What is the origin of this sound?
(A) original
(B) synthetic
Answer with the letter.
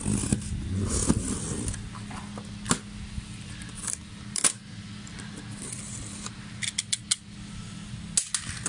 A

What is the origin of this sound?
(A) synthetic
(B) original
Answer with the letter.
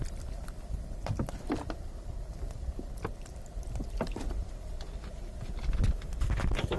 A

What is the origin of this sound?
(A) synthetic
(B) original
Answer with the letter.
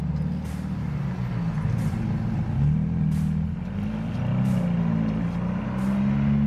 B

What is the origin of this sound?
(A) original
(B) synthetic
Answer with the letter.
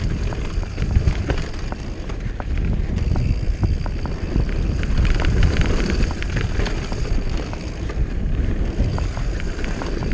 A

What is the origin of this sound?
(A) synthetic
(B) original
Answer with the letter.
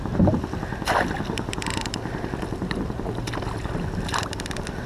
B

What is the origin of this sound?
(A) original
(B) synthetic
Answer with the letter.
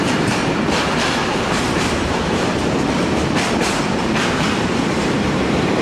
B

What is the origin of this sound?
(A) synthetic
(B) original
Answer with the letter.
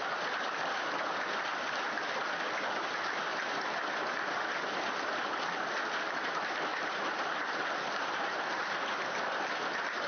B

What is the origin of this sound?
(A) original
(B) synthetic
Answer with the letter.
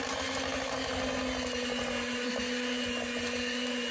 A